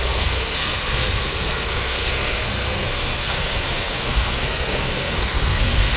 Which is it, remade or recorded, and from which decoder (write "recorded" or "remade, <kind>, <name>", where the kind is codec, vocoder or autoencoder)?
remade, codec, SNAC